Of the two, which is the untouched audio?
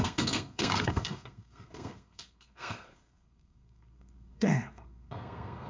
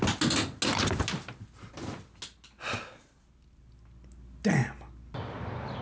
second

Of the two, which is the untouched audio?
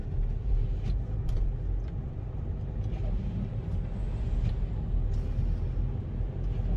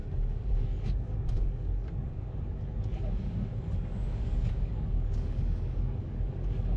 first